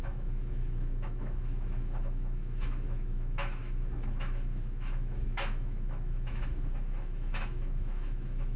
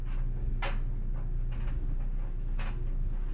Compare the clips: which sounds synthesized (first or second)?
first